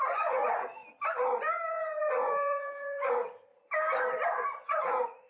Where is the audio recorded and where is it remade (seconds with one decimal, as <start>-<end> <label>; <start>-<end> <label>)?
0.0-0.8 remade; 0.8-1.7 recorded; 1.7-3.2 remade; 3.2-4.5 recorded; 4.5-5.3 remade